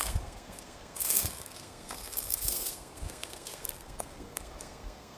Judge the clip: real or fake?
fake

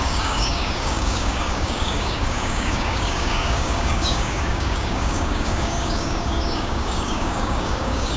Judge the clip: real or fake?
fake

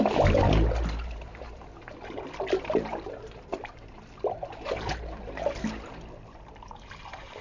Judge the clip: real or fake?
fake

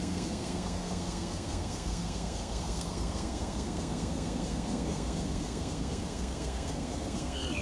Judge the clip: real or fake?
fake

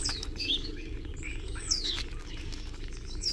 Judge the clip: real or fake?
fake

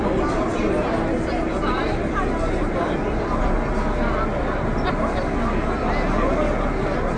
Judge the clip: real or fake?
real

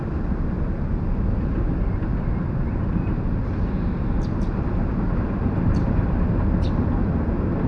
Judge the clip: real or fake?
real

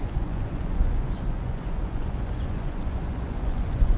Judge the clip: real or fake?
fake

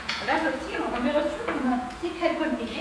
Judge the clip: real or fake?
fake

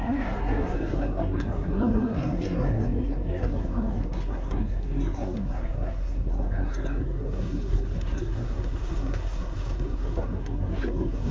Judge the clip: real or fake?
fake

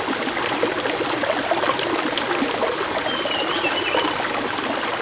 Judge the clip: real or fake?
real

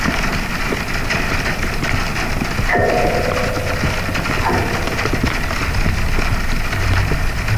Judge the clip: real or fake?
real